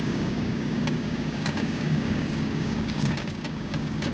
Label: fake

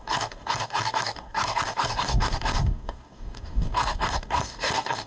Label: fake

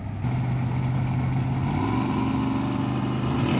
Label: real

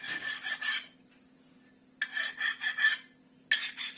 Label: real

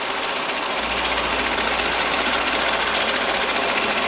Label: real